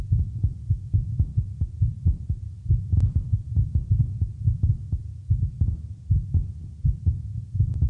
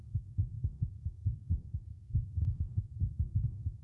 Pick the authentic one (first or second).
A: first